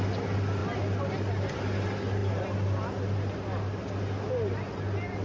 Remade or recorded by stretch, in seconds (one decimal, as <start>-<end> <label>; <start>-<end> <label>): 0.0-5.2 recorded